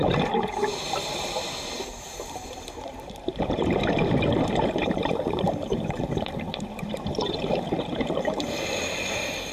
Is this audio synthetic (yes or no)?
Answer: yes